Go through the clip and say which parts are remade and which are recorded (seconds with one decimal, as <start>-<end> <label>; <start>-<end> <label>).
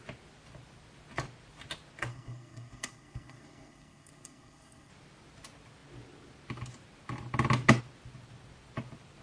0.0-2.1 recorded; 2.1-4.9 remade; 4.9-9.2 recorded